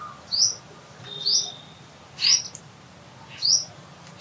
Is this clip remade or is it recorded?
recorded